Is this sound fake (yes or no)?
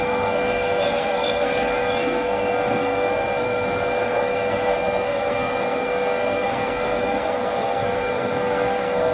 yes